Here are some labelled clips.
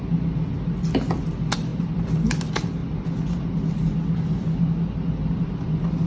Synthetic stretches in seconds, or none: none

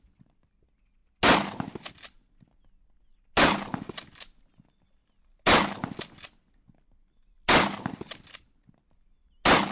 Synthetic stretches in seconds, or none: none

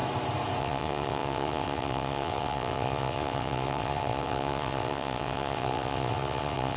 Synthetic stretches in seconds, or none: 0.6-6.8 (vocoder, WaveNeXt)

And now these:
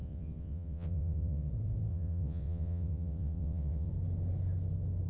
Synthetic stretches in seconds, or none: 0.0-1.5 (vocoder, WaveNeXt); 1.9-3.9

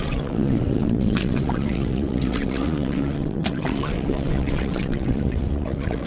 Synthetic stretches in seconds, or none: 0.0-6.1 (vocoder, WaveNeXt)

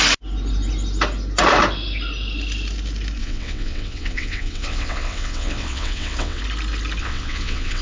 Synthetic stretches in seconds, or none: 3.2-6.4 (vocoder, WaveNeXt); 7.0-7.8